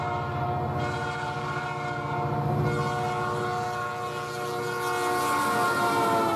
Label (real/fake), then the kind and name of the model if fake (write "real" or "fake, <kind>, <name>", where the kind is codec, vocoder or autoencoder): real